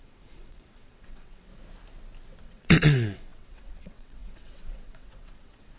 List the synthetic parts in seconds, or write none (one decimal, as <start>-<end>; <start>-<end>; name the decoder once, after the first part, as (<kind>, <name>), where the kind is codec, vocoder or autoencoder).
0.0-1.5 (vocoder, WaveNeXt); 2.4-5.8

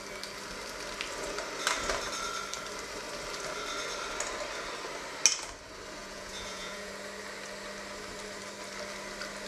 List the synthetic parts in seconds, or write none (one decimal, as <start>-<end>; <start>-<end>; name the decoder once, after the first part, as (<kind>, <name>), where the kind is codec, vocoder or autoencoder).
6.0-6.9 (vocoder, Vocos)

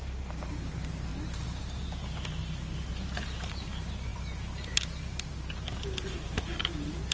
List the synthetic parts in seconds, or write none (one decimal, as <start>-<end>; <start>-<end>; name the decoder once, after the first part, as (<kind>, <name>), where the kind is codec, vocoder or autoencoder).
none